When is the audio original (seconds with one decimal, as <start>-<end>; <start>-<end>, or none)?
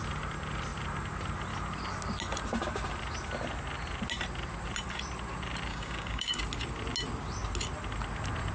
0.0-5.7; 6.4-8.5